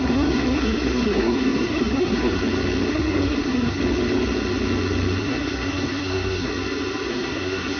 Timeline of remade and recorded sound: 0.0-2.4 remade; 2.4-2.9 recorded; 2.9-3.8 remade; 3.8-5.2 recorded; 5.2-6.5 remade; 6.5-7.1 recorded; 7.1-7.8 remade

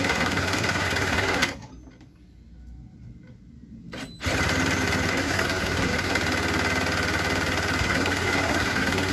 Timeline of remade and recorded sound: 0.0-1.7 remade; 1.7-5.1 recorded; 5.1-6.2 remade; 6.2-7.8 recorded; 7.8-9.1 remade

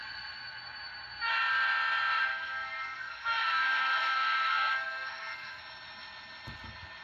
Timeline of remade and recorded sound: 0.0-2.3 recorded; 2.3-5.6 remade; 5.6-7.0 recorded

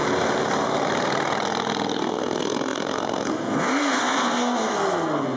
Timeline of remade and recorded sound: 0.0-2.0 recorded; 2.0-5.4 remade

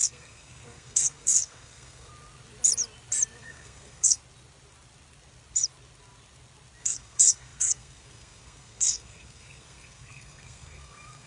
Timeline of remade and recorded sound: 0.0-2.1 remade; 2.1-3.4 recorded; 3.4-4.2 remade; 4.2-6.8 recorded; 6.8-11.3 remade